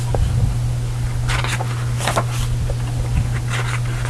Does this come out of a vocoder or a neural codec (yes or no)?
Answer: no